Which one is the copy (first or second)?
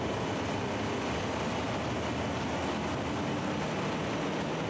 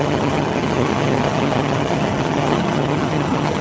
second